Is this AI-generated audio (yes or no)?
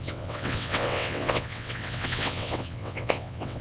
yes